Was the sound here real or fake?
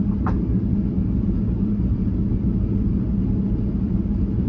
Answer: fake